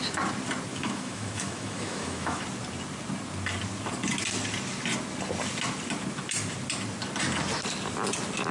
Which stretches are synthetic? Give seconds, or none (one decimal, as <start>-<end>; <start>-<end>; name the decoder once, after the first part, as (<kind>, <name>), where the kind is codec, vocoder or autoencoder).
0.7-2.4 (autoencoder, DAC-VAE)